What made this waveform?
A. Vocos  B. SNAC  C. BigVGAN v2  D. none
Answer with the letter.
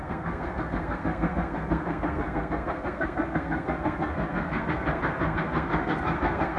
B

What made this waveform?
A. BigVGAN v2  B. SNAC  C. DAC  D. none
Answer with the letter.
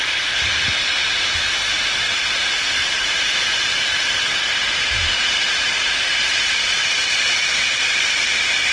D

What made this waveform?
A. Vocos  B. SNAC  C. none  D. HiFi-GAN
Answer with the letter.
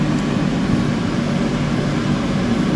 C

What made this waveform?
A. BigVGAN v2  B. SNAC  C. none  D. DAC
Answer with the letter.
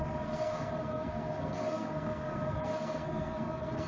B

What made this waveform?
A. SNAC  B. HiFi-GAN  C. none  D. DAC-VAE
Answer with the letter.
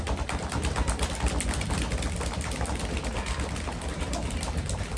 C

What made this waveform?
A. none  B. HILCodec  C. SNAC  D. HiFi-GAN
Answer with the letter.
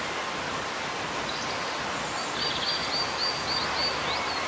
A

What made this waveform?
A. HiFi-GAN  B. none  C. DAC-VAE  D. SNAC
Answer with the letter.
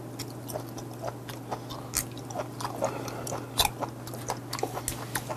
B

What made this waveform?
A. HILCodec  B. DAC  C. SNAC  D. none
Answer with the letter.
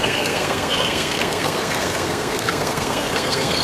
C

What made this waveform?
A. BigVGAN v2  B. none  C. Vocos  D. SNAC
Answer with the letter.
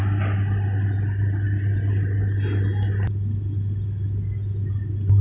B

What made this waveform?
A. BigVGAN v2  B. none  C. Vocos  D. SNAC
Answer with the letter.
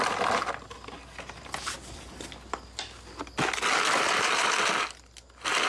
B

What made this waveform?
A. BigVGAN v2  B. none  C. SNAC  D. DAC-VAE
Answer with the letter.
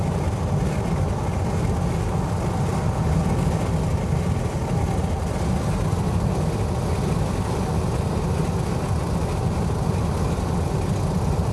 B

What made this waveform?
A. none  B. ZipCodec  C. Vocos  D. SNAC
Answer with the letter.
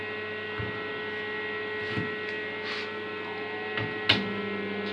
A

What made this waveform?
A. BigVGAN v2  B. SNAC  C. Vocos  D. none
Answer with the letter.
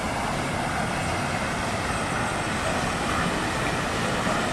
D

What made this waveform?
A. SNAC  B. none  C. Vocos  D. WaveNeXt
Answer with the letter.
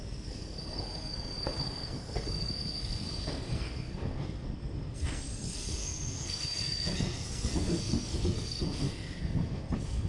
A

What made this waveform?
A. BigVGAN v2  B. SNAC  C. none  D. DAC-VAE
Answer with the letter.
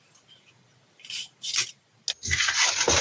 C